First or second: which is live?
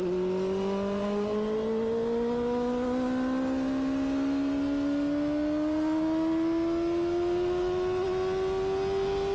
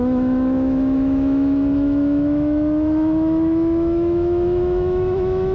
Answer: first